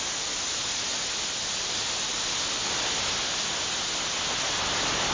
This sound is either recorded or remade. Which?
recorded